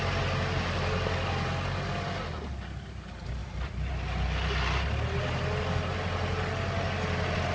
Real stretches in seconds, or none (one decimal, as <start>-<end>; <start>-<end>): 0.0-7.5